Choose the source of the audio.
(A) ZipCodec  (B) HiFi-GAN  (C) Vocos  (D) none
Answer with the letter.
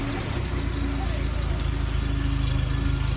D